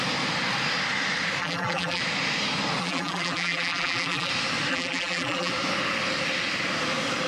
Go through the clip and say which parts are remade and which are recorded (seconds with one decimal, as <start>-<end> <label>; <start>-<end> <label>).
0.0-1.4 recorded; 1.4-2.0 remade; 2.0-2.8 recorded; 2.8-4.3 remade; 4.3-4.7 recorded; 4.7-5.5 remade; 5.5-7.3 recorded